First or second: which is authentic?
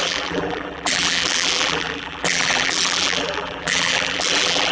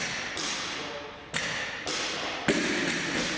second